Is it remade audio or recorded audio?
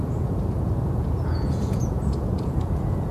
remade